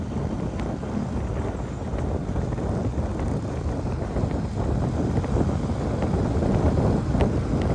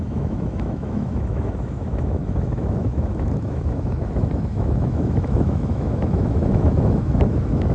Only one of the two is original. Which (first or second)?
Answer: first